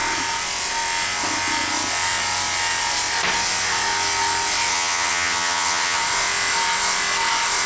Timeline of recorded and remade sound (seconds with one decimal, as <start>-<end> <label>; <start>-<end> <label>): 0.0-4.7 recorded; 4.7-6.0 remade; 6.0-7.7 recorded